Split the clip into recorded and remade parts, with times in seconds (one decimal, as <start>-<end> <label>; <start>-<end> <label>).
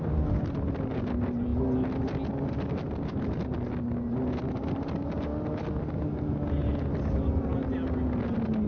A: 0.0-8.7 recorded